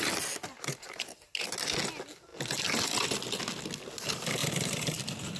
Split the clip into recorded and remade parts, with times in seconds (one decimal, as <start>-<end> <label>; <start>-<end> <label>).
0.0-0.4 recorded; 0.4-1.3 remade; 1.3-4.4 recorded; 4.4-5.4 remade